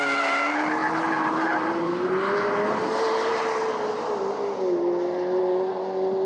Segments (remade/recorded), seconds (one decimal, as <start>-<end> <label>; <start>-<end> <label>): 0.0-6.3 recorded